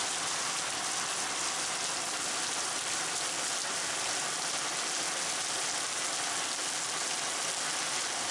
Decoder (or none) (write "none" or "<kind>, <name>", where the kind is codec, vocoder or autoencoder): none